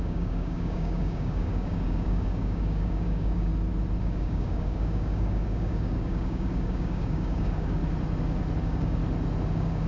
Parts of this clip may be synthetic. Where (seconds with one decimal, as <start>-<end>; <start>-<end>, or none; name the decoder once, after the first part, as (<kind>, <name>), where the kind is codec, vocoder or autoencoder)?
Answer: 0.0-3.5 (codec, DAC); 4.0-7.8; 8.6-9.0; 9.5-9.9